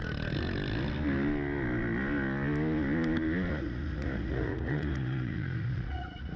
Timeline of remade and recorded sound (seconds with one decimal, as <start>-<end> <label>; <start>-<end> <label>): 0.0-3.5 recorded; 3.5-6.4 remade